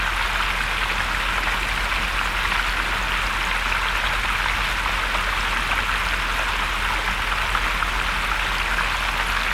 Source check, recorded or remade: recorded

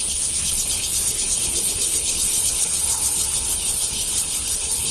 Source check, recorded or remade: remade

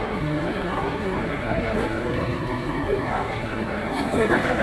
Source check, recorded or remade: remade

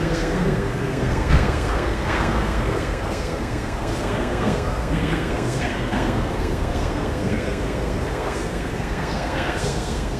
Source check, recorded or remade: remade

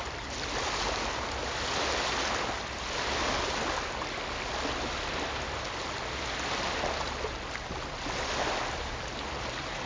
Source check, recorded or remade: recorded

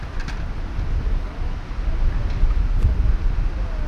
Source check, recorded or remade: recorded